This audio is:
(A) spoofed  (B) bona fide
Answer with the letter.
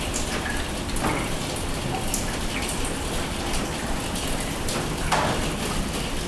B